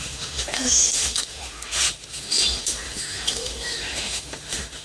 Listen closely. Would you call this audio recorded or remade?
remade